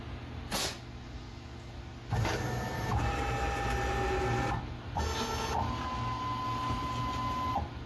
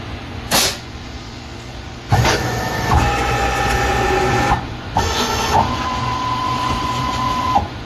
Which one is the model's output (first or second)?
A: second